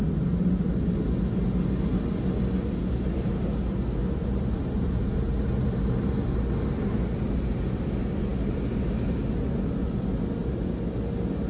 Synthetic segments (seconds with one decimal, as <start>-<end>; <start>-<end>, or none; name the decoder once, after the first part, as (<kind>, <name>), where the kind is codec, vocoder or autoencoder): none